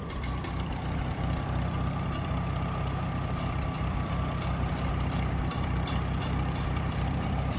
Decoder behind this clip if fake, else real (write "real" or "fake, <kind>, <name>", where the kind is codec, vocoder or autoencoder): fake, vocoder, BigVGAN v2